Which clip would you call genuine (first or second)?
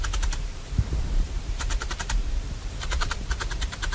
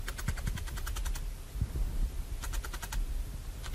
second